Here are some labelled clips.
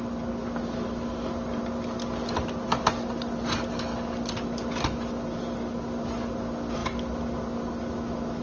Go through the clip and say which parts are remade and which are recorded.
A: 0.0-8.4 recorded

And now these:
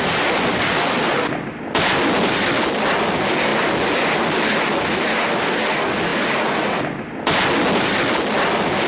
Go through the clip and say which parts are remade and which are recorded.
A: 0.0-8.9 recorded

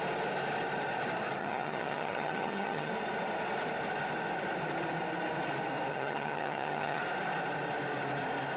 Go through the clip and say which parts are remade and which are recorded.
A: 0.0-1.4 recorded; 1.4-2.9 remade; 2.9-5.9 recorded; 5.9-7.0 remade; 7.0-8.6 recorded

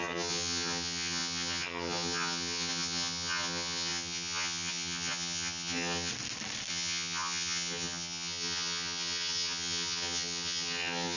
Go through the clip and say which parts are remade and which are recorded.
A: 0.0-6.1 remade; 6.1-6.7 recorded; 6.7-11.2 remade

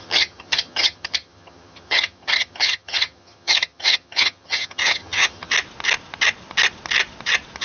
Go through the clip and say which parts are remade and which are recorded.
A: 0.0-5.5 remade; 5.5-7.6 recorded

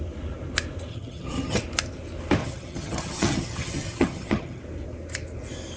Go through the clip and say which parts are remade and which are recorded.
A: 0.0-0.9 recorded; 0.9-1.6 remade; 1.6-2.4 recorded; 2.4-4.6 remade; 4.6-5.8 recorded

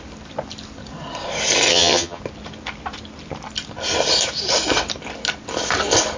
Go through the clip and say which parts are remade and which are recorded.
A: 0.0-1.7 recorded; 1.7-2.2 remade; 2.2-6.2 recorded

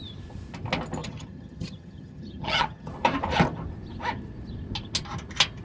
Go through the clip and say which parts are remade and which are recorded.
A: 0.0-1.0 recorded; 1.0-2.9 remade; 2.9-5.6 recorded